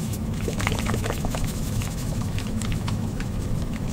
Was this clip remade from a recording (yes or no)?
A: yes